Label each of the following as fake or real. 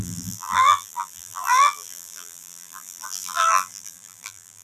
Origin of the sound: fake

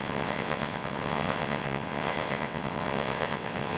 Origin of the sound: fake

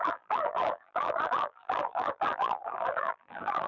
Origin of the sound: fake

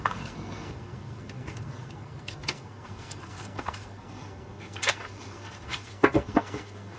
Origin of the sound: fake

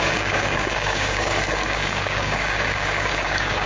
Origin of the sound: fake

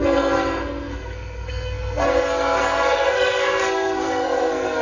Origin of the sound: fake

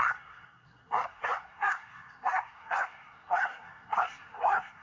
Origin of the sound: fake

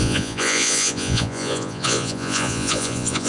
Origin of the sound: fake